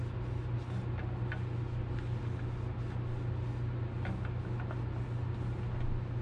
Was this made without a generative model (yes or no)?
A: yes